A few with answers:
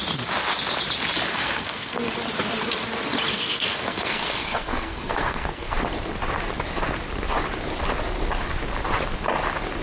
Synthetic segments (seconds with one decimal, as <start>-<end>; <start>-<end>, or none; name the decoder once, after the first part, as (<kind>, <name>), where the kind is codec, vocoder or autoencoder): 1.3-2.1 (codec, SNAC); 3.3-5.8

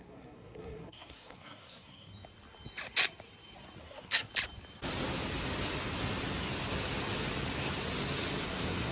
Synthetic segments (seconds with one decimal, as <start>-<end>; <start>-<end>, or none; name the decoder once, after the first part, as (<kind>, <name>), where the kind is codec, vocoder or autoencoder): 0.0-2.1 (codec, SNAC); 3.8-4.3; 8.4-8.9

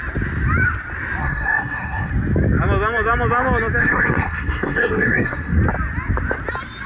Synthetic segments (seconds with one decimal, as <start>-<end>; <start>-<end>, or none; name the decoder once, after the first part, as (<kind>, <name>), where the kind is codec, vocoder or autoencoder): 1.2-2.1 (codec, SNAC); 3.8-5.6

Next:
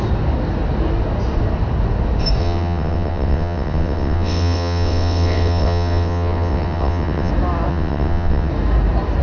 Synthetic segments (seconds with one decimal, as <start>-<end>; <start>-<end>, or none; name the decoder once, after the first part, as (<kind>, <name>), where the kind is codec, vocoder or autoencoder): 2.4-7.3 (vocoder, WaveNeXt); 7.7-8.5

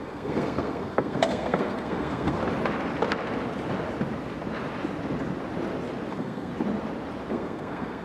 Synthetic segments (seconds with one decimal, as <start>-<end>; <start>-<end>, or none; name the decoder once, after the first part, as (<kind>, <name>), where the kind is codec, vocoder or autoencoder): 0.0-2.4 (codec, SNAC); 6.1-6.5; 7.3-8.0

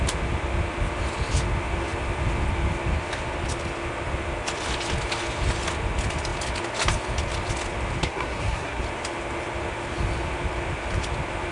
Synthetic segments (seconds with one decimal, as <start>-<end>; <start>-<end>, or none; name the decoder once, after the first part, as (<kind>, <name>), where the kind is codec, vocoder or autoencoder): 8.0-8.8 (codec, SNAC)

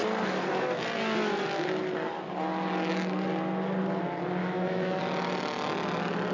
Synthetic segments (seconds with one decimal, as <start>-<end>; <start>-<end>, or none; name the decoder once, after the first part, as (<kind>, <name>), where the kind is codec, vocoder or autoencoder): 4.4-5.0 (autoencoder, DAC-VAE)

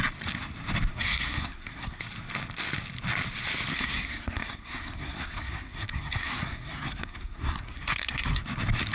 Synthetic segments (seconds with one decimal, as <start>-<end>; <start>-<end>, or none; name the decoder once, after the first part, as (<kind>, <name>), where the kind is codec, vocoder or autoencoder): 0.9-2.0 (codec, SNAC); 3.7-8.4